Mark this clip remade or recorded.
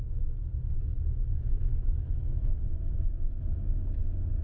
remade